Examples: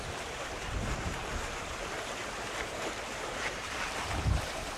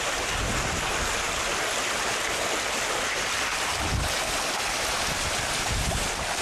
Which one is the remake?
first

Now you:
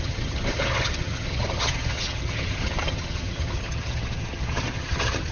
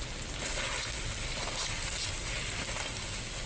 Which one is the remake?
first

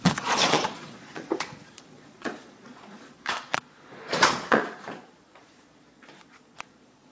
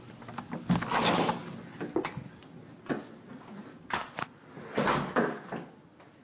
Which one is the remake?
first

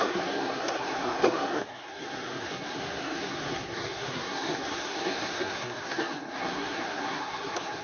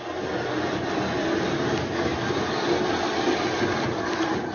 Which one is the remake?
first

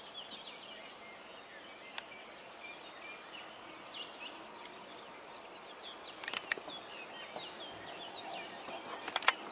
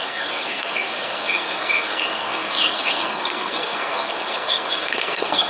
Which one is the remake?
second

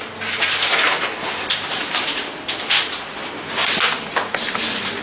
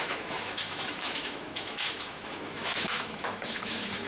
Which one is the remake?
second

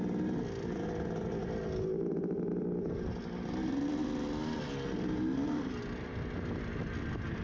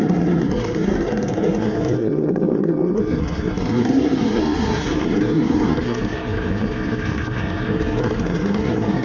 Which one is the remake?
second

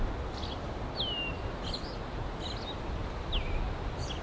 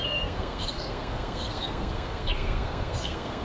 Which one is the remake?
second